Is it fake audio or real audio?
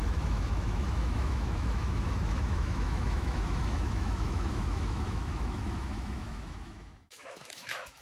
fake